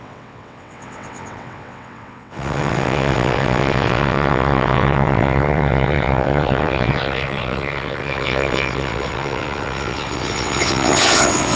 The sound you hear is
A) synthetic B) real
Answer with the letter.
A